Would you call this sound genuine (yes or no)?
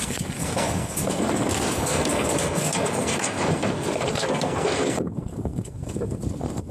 no